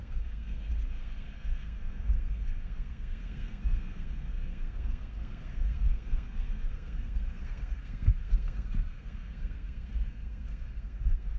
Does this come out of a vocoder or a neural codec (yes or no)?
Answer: yes